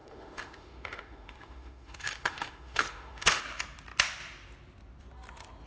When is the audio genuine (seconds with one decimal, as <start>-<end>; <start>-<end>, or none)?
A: 3.4-5.7